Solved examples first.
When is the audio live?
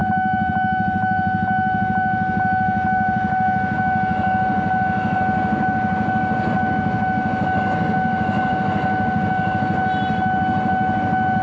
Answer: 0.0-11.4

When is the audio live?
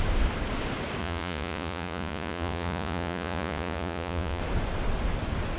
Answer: 0.0-1.0; 4.4-5.6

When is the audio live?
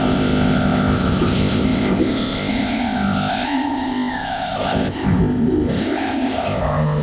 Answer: none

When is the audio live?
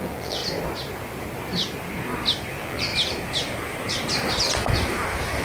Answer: 0.4-2.5; 2.9-5.4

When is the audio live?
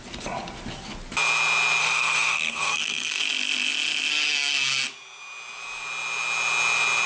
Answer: 0.0-1.8; 3.2-7.1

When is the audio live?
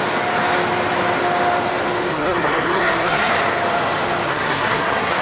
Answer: 0.0-2.1; 3.3-4.3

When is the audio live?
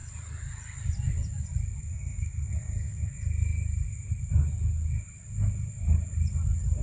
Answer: 0.0-1.8; 3.1-6.8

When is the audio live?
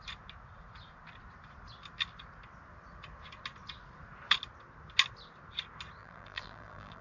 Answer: 0.0-6.0